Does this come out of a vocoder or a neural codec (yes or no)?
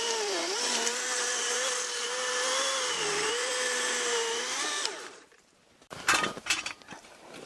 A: yes